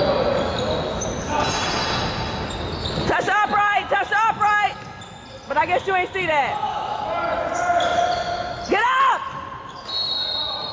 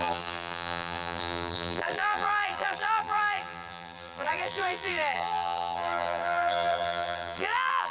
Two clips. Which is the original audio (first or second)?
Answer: first